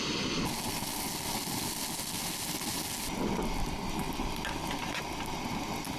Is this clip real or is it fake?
real